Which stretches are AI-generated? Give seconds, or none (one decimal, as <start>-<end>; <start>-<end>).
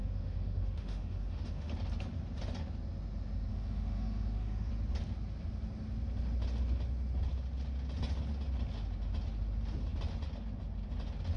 0.0-1.7; 3.5-4.7